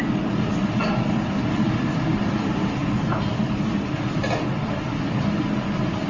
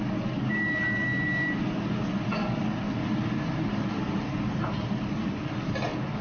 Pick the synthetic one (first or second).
first